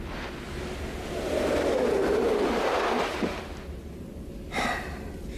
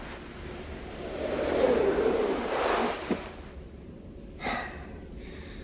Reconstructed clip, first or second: second